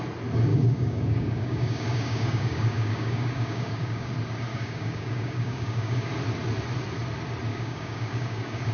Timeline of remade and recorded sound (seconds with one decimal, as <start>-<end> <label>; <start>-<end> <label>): 0.0-0.5 recorded; 0.5-4.1 remade; 4.1-4.5 recorded; 4.5-6.1 remade; 6.1-7.5 recorded; 7.5-8.7 remade